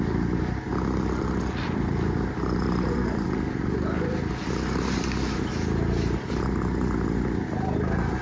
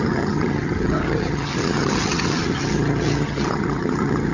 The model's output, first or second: second